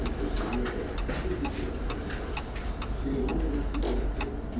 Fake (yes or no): no